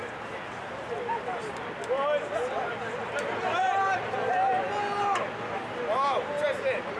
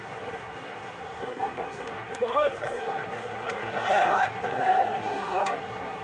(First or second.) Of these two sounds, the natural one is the first